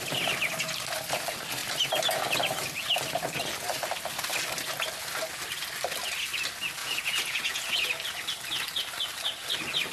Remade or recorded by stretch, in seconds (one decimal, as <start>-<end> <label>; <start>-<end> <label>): 0.0-6.8 recorded; 6.8-7.9 remade; 7.9-9.9 recorded

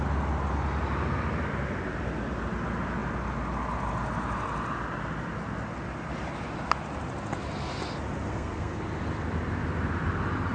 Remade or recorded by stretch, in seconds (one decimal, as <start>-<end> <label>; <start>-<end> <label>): 0.0-8.3 recorded; 8.3-8.8 remade; 8.8-10.5 recorded

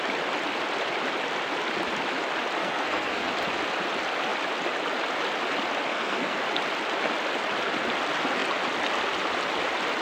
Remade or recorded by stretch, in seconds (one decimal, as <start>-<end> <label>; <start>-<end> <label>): 0.0-2.6 recorded; 2.6-3.3 remade; 3.3-5.9 recorded; 5.9-6.4 remade; 6.4-10.0 recorded